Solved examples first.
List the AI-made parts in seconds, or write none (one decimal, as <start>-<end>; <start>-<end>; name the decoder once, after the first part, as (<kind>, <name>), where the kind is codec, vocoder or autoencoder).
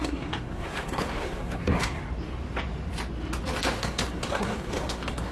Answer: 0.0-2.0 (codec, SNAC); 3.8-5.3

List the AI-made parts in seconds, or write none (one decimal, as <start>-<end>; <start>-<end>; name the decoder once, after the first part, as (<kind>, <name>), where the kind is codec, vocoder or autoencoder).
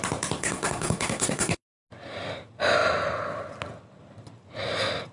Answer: 0.4-1.6 (codec, SNAC)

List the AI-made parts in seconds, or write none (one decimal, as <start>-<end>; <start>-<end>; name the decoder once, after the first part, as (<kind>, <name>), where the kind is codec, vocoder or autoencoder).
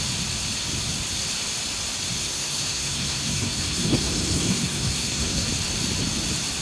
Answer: 2.2-5.5 (codec, SNAC)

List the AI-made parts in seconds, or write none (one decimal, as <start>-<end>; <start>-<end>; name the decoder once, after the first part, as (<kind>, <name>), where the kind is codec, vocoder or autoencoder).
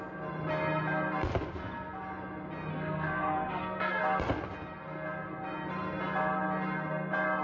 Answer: 2.7-4.0 (codec, SNAC)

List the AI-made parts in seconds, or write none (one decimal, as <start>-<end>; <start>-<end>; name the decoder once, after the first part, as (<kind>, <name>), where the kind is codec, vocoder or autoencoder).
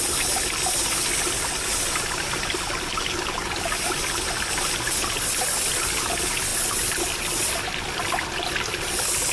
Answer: none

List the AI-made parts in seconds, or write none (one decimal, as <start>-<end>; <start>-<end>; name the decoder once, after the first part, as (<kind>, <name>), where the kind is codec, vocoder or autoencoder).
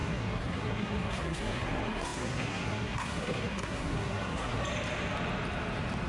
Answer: 0.0-4.6 (codec, SNAC)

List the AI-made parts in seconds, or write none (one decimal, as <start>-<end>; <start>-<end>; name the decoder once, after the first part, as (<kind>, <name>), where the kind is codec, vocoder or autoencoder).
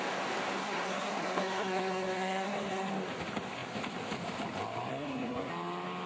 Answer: 0.6-2.9 (codec, SNAC); 4.9-5.5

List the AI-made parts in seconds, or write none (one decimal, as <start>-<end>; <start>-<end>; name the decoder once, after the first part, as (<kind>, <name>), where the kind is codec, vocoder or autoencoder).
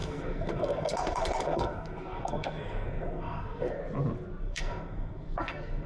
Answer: 0.0-3.8 (codec, SNAC); 4.4-5.9